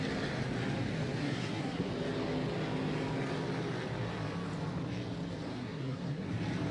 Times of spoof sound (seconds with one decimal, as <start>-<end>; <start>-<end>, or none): 1.2-1.9; 5.5-6.3